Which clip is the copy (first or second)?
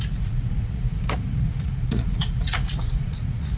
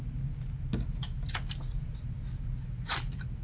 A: first